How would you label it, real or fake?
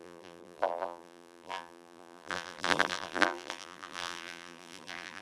fake